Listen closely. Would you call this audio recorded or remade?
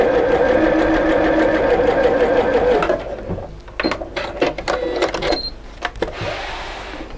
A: recorded